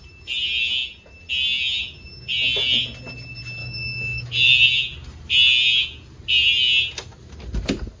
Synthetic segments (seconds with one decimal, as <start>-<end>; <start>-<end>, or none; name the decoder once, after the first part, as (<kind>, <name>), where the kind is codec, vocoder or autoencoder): 3.6-4.5 (autoencoder, DAC-VAE)